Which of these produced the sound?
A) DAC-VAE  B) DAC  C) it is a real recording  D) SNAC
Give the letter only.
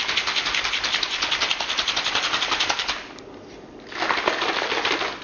C